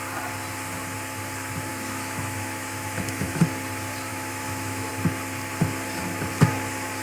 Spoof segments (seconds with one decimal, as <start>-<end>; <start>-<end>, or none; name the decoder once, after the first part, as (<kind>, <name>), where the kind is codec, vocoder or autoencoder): 1.7-3.4 (autoencoder, DAC-VAE); 4.1-4.9